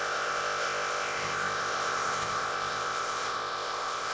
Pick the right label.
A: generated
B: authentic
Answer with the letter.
A